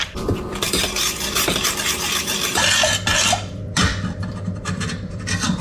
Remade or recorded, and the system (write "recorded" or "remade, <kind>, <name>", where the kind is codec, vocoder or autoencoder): remade, vocoder, BigVGAN v2